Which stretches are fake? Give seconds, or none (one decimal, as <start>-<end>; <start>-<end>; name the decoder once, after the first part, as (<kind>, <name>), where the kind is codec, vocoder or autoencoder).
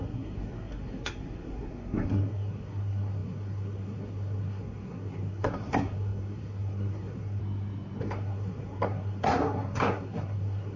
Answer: 0.0-7.4 (codec, SNAC); 8.0-10.8